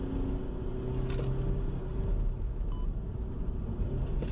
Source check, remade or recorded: recorded